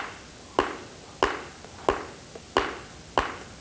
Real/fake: real